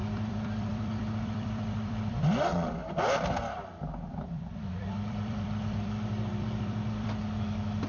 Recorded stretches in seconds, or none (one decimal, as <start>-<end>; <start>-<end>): 2.1-2.5; 7.2-7.9